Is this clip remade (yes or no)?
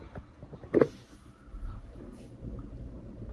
yes